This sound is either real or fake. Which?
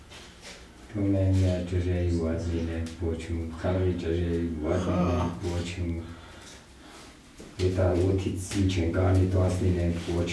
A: real